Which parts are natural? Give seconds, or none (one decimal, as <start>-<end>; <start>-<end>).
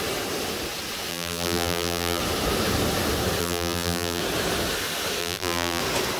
0.0-1.1; 2.2-3.4; 4.2-5.2; 5.8-6.2